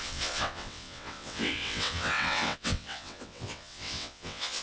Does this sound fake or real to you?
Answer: fake